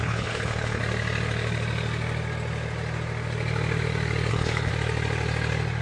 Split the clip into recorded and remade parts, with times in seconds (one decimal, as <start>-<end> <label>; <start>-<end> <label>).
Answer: 0.0-0.8 remade; 0.8-4.3 recorded; 4.3-4.7 remade; 4.7-5.8 recorded